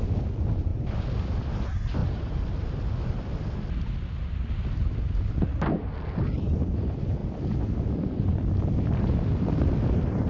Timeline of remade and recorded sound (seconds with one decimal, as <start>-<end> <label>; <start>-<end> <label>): 0.0-10.3 recorded

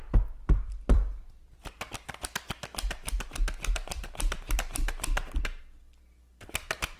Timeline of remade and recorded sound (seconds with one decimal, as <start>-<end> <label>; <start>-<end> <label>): 0.0-3.0 recorded; 3.0-5.6 remade; 5.6-7.0 recorded

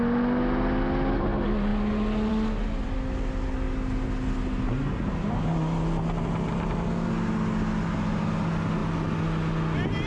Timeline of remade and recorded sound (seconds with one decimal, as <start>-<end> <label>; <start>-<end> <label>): 0.0-10.1 recorded

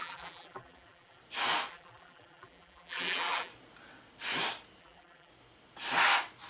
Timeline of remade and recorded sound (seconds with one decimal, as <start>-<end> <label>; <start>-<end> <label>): 0.0-1.2 remade; 1.2-1.7 recorded; 1.7-3.5 remade; 3.5-4.8 recorded; 4.8-5.3 remade; 5.3-6.5 recorded

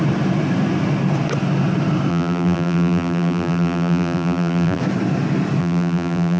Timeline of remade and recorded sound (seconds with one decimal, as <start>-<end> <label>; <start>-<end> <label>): 0.0-2.1 recorded; 2.1-4.8 remade; 4.8-5.6 recorded; 5.6-6.4 remade

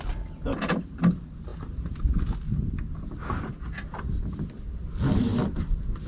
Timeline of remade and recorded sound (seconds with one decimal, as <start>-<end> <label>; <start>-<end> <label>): 0.0-5.3 recorded; 5.3-6.1 remade

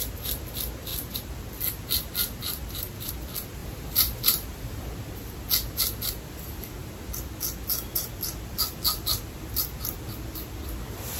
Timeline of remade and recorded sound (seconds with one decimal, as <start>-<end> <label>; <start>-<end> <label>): 0.0-3.6 recorded; 3.6-4.9 remade; 4.9-11.2 recorded